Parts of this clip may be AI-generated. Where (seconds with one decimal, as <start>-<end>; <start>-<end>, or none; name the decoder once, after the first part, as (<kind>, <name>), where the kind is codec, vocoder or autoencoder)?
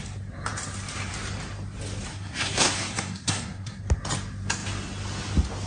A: 2.1-3.8 (codec, SNAC)